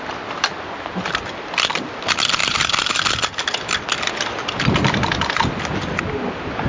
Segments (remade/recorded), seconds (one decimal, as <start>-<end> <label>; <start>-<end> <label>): 0.0-2.4 recorded; 2.4-3.0 remade; 3.0-6.7 recorded